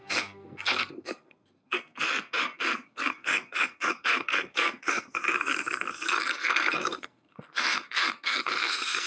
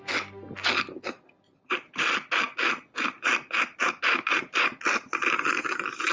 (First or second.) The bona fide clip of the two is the second